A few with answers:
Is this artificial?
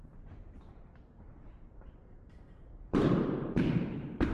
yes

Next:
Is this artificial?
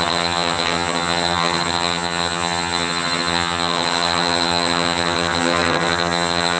yes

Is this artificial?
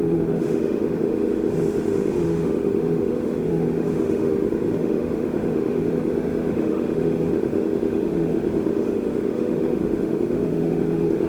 yes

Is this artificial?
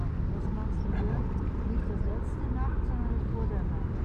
no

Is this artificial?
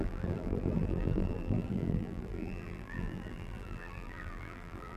yes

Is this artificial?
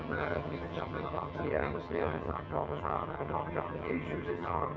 yes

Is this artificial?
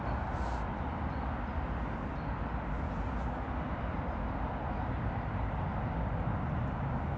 no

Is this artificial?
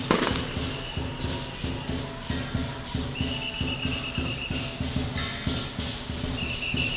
no